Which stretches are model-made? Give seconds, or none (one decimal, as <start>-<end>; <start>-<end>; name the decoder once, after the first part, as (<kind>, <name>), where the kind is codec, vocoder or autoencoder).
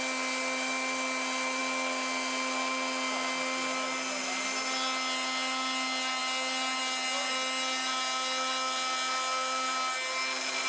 none